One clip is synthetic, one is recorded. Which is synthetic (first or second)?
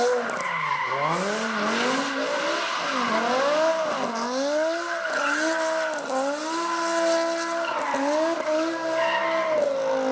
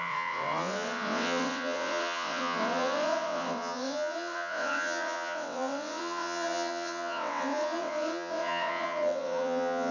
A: second